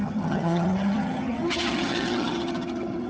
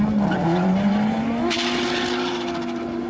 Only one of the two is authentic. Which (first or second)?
second